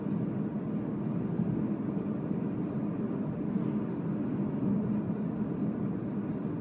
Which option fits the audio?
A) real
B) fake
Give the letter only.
A